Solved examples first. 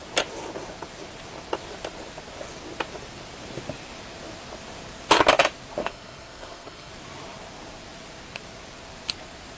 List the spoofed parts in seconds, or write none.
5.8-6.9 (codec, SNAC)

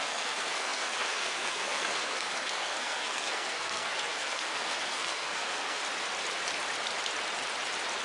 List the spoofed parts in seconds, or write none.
0.0-5.8 (codec, SNAC)

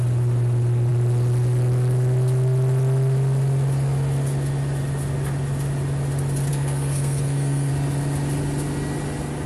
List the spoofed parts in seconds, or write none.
6.5-7.7 (codec, SNAC)

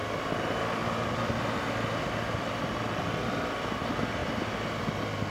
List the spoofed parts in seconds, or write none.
none

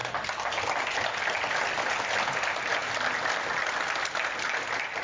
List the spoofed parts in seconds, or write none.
none

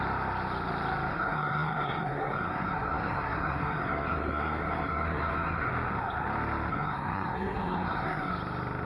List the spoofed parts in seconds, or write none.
1.1-5.7 (codec, SNAC); 6.7-8.3

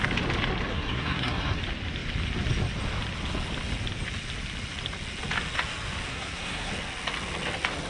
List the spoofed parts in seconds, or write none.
0.7-1.6 (codec, SNAC); 6.1-6.7

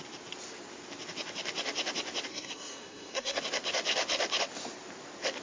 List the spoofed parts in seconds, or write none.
2.3-3.4 (codec, SNAC)